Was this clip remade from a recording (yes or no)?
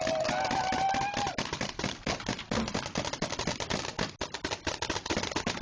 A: no